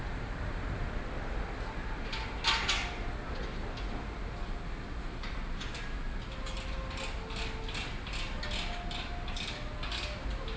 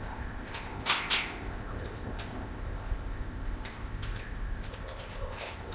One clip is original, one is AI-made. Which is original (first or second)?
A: first